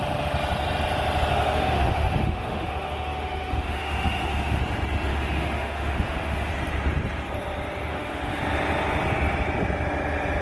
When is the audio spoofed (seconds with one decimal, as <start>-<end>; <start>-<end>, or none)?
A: 1.3-4.6; 5.1-6.5; 7.9-8.4